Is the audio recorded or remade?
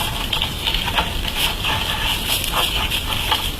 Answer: recorded